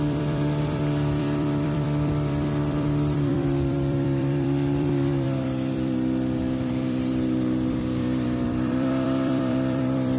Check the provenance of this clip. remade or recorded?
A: remade